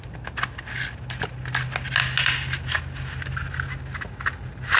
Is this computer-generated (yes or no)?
no